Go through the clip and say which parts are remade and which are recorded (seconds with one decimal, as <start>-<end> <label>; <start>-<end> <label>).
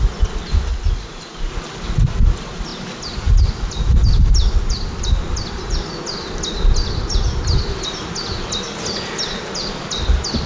0.0-0.7 recorded; 0.7-1.5 remade; 1.5-10.5 recorded